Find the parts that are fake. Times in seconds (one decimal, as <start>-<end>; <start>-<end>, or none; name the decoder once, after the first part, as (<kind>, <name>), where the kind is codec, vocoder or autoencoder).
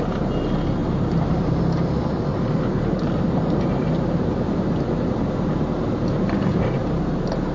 0.8-1.6 (vocoder, BigVGAN v2); 2.3-6.8